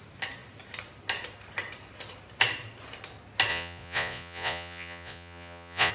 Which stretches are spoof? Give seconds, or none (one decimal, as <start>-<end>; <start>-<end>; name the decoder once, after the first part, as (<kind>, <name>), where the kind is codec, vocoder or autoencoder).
3.5-5.9 (vocoder, Vocos)